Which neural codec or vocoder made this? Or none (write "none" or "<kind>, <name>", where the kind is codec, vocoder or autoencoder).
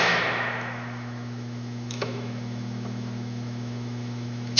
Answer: autoencoder, DAC-VAE